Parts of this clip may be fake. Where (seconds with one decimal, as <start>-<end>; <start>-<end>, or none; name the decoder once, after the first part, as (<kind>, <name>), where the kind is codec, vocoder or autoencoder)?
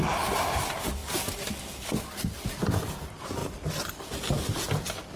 none